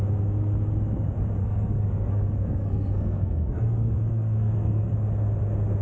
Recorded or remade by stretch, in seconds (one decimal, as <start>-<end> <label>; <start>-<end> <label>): 0.0-1.4 recorded; 1.4-4.9 remade; 4.9-5.8 recorded